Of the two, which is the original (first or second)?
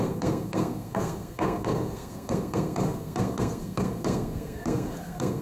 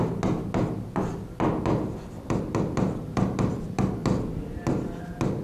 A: second